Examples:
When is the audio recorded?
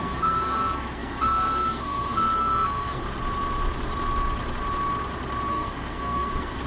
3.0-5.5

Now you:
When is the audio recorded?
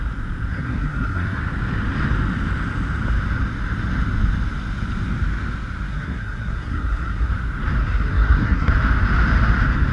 0.0-0.5; 1.4-5.9; 7.3-7.8; 8.7-9.9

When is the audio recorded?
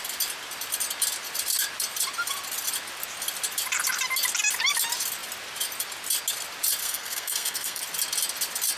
0.0-6.8; 7.8-8.8